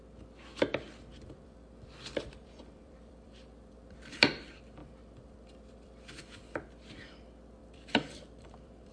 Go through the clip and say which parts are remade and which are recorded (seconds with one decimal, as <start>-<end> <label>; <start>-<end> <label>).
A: 0.0-1.1 recorded; 1.1-4.2 remade; 4.2-4.8 recorded; 4.8-6.2 remade; 6.2-7.6 recorded; 7.6-8.9 remade

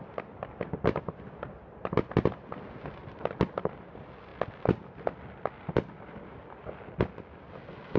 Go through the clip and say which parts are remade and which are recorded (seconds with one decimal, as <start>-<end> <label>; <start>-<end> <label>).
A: 0.0-8.0 recorded

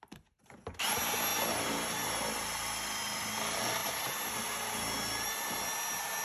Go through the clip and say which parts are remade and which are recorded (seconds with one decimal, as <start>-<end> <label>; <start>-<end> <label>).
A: 0.0-3.8 recorded; 3.8-4.3 remade; 4.3-6.2 recorded